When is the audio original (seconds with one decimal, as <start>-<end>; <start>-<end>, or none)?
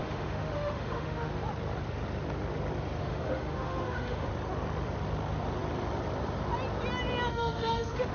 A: 1.3-3.0; 4.3-7.3